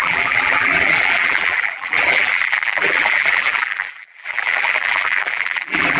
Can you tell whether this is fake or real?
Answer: fake